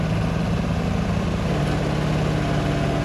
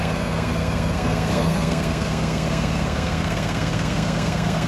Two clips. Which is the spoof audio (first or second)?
second